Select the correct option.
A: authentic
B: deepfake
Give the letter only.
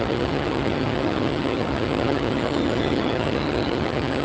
B